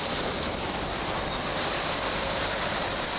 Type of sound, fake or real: real